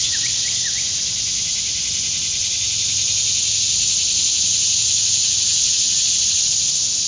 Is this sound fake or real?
real